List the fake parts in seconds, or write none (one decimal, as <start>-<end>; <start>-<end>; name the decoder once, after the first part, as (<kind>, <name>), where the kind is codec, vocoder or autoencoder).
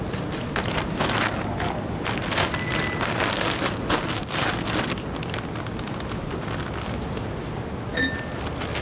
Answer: none